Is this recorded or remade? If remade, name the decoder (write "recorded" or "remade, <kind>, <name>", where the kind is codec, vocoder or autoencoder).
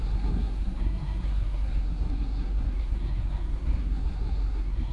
remade, codec, SNAC